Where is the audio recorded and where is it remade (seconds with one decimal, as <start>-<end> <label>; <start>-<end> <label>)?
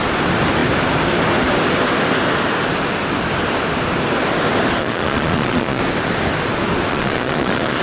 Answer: 0.0-4.8 recorded; 4.8-5.8 remade; 5.8-6.9 recorded; 6.9-7.8 remade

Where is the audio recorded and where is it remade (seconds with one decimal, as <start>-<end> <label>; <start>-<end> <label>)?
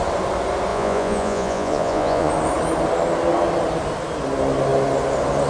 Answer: 0.0-0.7 recorded; 0.7-2.3 remade; 2.3-5.5 recorded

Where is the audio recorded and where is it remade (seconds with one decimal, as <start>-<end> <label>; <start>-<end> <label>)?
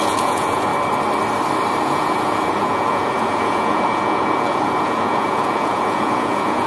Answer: 0.0-0.7 remade; 0.7-1.8 recorded; 1.8-6.7 remade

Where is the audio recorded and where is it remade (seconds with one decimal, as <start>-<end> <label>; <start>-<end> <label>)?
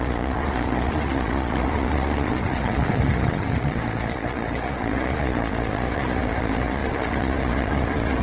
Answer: 0.0-8.2 remade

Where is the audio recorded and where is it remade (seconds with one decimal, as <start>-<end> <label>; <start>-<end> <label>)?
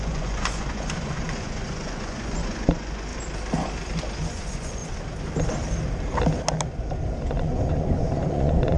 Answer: 0.0-3.1 remade; 3.1-4.2 recorded; 4.2-4.8 remade; 4.8-7.2 recorded; 7.2-8.8 remade